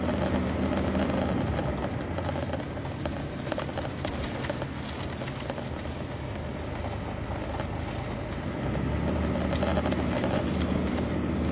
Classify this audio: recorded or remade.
recorded